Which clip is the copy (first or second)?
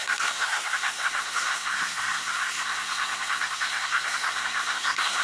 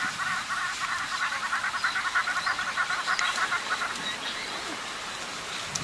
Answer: first